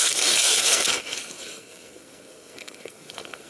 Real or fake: fake